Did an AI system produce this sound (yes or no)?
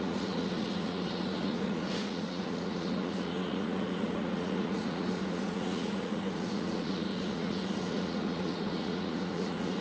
yes